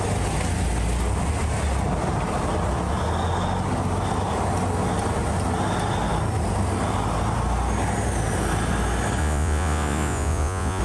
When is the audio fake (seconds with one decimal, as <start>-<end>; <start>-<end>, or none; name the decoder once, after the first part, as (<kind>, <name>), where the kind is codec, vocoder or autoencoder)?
9.2-10.8 (vocoder, Vocos)